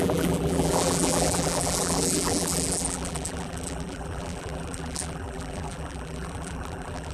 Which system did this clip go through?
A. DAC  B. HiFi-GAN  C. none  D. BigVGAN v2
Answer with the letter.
D